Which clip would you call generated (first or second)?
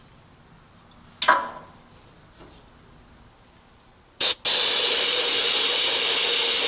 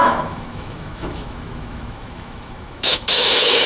second